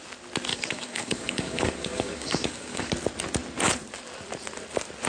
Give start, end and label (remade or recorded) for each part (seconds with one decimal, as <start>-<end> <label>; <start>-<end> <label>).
0.0-0.5 recorded; 0.5-2.9 remade; 2.9-5.1 recorded